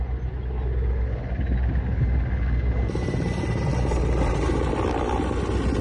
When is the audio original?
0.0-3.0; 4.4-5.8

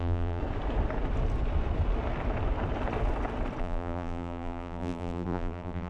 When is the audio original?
0.4-3.6

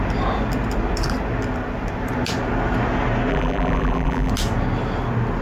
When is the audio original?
0.0-3.3; 4.3-5.4

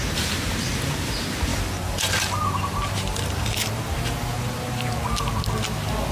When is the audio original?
0.0-1.5; 4.9-6.1

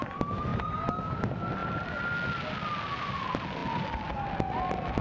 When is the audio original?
0.0-5.0